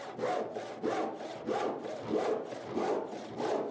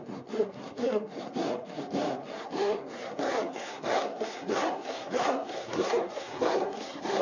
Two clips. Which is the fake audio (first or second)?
second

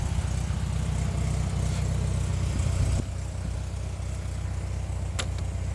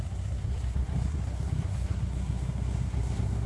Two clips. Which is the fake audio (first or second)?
second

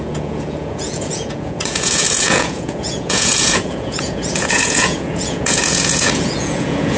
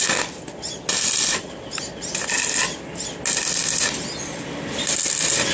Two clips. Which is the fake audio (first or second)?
first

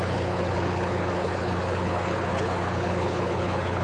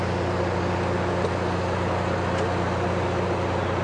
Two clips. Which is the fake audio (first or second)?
first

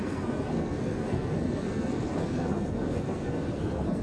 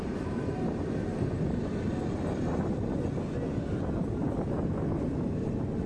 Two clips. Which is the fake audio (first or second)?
first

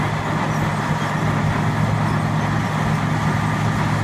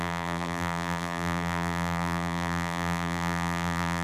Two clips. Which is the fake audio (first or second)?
second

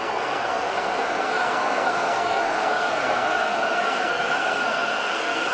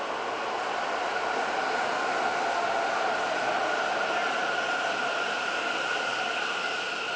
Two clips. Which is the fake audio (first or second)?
first